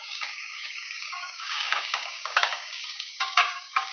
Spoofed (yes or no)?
yes